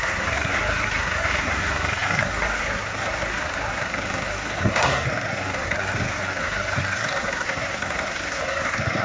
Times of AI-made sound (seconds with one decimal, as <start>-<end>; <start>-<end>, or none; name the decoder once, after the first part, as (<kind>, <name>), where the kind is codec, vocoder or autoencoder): 0.0-9.0 (codec, SNAC)